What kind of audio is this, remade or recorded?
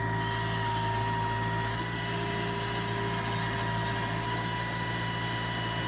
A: recorded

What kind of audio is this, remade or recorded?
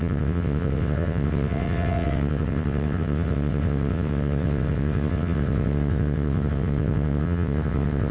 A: remade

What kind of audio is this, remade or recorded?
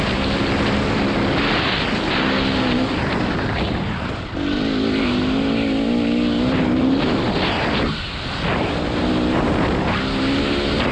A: recorded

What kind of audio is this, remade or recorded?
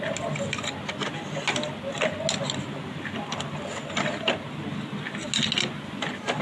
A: recorded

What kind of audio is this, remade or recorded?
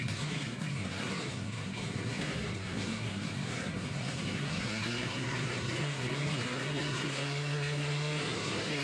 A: remade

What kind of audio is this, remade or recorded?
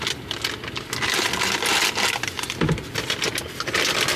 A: recorded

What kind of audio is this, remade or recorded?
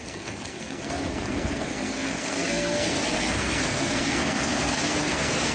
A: remade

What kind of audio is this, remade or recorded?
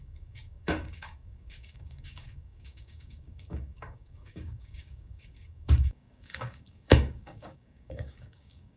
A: remade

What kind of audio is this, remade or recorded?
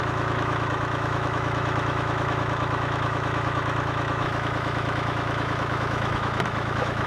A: remade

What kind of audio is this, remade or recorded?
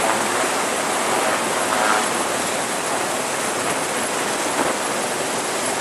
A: recorded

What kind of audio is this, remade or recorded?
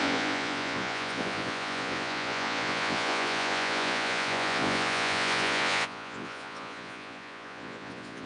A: remade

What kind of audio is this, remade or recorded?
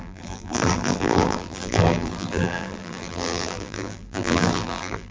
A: remade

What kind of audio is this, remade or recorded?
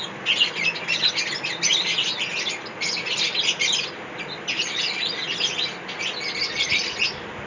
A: recorded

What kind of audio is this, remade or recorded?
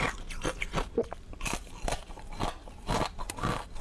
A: recorded